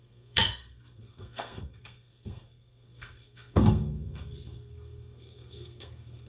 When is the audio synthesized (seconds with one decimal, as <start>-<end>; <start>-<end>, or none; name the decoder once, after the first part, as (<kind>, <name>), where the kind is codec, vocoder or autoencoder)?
0.0-6.3 (codec, SNAC)